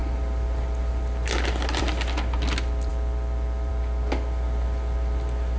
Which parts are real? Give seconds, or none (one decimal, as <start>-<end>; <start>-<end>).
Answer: 0.0-5.6